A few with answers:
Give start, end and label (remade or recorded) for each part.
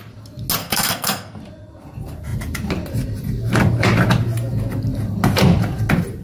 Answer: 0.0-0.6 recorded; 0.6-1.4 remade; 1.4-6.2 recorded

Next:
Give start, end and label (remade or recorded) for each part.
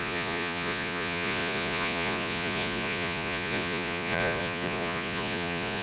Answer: 0.0-5.8 remade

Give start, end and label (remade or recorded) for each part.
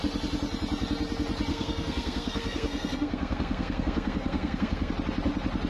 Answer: 0.0-1.5 recorded; 1.5-4.9 remade; 4.9-5.7 recorded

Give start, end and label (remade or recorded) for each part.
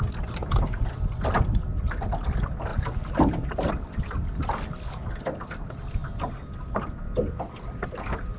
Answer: 0.0-8.4 recorded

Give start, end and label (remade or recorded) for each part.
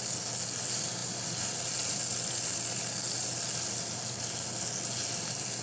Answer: 0.0-5.6 recorded